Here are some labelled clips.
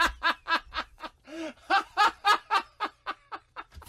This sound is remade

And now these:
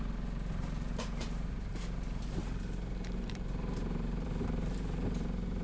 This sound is remade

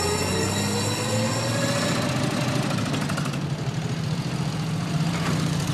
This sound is recorded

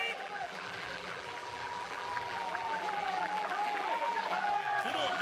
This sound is remade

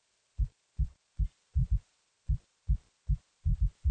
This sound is remade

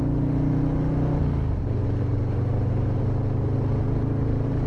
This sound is recorded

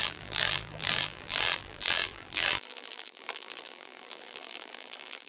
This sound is remade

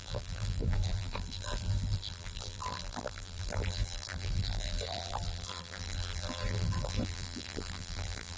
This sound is remade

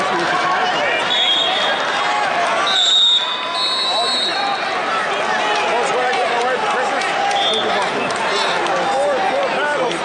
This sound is recorded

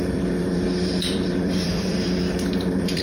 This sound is remade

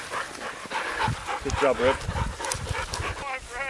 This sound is recorded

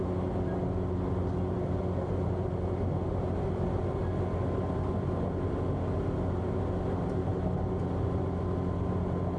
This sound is recorded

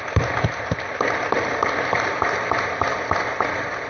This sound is recorded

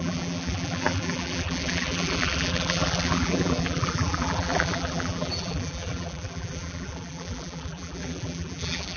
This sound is remade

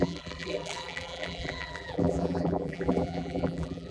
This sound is remade